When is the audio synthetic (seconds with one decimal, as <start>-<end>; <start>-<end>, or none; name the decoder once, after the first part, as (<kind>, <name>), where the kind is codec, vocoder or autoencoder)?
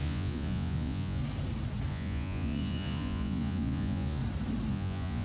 0.0-1.2 (vocoder, Vocos); 1.9-4.2; 4.7-5.2